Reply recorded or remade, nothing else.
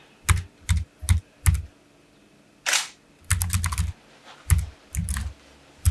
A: recorded